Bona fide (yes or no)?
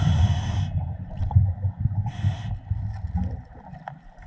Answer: yes